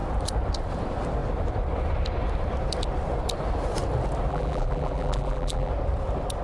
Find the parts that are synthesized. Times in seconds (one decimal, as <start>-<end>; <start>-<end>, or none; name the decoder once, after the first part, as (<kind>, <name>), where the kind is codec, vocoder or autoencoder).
4.3-5.7 (vocoder, BigVGAN v2)